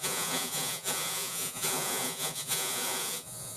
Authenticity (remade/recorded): remade